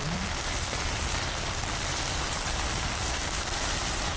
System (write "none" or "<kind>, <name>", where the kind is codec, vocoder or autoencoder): vocoder, BigVGAN v2